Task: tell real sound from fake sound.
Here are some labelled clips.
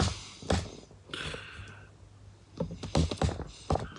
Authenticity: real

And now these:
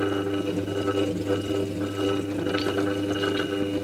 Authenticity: real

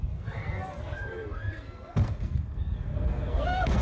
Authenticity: fake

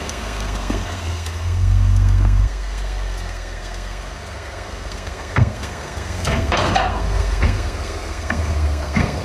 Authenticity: fake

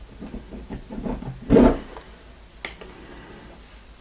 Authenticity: real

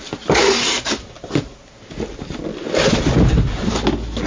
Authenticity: real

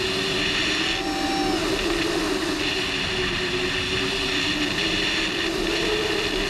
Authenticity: real